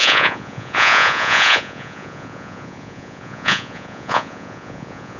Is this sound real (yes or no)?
no